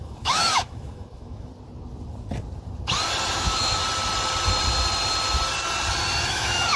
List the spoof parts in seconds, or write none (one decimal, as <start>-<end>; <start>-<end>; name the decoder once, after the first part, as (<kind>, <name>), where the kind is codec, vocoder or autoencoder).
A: 0.0-1.5 (autoencoder, DAC-VAE); 3.3-3.8; 6.3-6.8